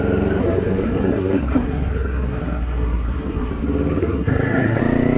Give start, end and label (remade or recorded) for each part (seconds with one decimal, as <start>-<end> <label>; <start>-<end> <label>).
0.0-0.4 recorded; 0.4-3.5 remade; 3.5-4.0 recorded; 4.0-4.8 remade; 4.8-5.2 recorded